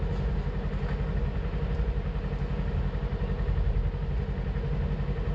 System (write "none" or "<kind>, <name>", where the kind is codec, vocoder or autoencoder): none